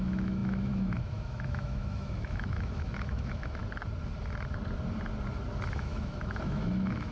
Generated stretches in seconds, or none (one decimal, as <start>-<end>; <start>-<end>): 0.0-3.6; 5.7-7.1